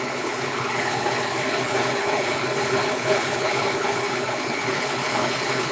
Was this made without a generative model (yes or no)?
no